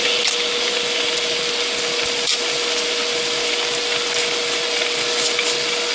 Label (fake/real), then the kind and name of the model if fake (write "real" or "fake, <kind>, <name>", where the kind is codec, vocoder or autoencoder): real